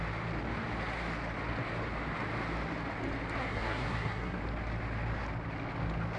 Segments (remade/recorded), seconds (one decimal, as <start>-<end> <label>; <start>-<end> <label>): 0.0-3.4 recorded; 3.4-4.4 remade; 4.4-6.2 recorded